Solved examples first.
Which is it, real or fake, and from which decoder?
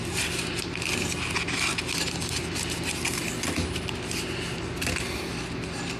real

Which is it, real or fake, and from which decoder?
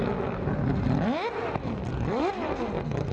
real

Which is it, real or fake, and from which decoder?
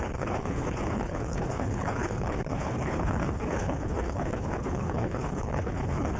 fake, codec, HILCodec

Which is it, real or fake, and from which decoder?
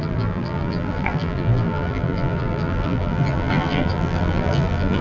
fake, vocoder, BigVGAN v2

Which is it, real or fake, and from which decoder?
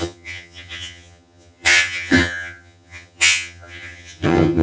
fake, vocoder, HiFi-GAN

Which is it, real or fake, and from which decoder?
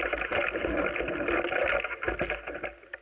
real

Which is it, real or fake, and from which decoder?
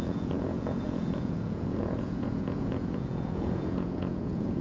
fake, vocoder, Vocos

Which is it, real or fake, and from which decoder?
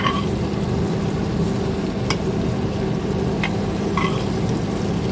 real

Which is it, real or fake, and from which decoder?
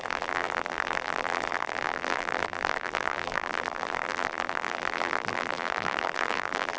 fake, vocoder, BigVGAN v2